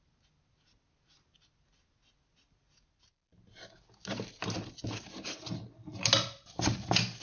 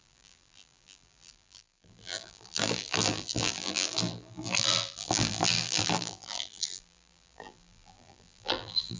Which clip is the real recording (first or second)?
first